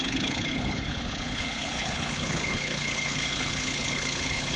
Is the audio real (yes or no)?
no